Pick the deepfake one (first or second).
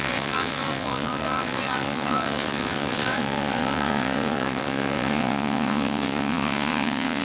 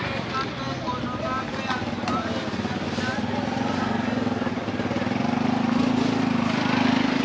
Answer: first